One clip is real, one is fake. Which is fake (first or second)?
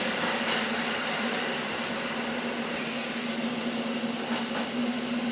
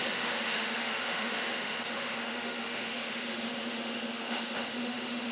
second